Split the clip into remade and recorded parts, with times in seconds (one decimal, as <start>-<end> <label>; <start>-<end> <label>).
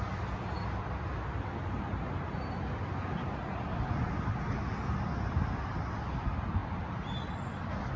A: 0.0-8.0 recorded